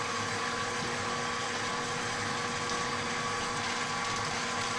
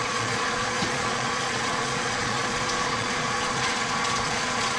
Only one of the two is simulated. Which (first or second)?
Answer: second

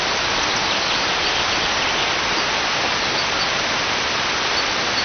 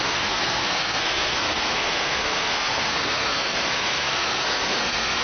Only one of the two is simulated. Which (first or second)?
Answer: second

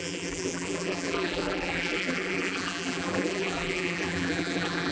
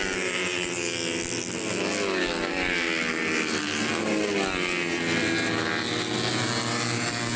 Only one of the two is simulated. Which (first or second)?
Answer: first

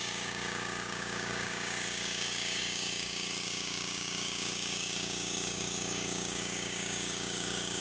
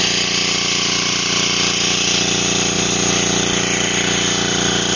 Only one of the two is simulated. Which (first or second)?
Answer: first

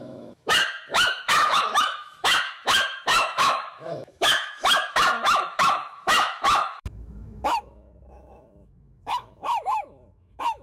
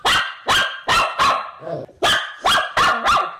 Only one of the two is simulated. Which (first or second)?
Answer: first